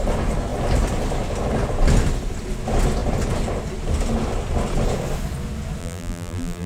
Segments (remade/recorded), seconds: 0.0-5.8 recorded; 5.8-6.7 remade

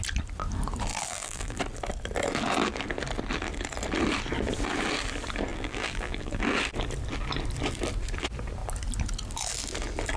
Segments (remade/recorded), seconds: 0.0-0.9 recorded; 0.9-1.6 remade; 1.6-5.5 recorded; 5.5-6.4 remade; 6.4-10.2 recorded